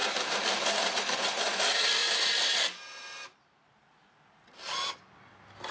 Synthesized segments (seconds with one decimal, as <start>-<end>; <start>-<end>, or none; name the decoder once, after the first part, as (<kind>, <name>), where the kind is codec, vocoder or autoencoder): 0.0-0.7 (vocoder, BigVGAN v2); 2.0-5.2